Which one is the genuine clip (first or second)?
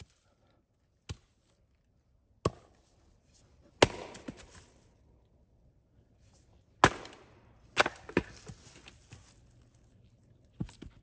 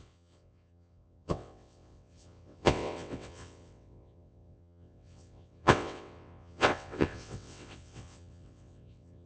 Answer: first